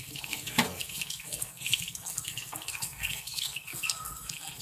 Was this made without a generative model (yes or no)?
no